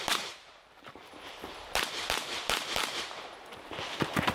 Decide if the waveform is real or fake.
fake